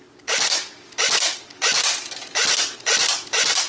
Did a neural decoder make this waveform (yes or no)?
no